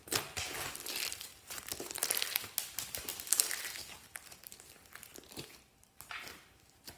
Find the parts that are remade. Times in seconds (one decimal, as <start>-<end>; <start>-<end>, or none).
none